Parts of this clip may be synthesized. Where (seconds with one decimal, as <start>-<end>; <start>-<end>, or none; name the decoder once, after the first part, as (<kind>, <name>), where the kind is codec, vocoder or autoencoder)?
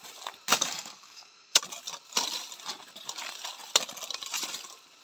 0.5-1.6 (codec, DAC)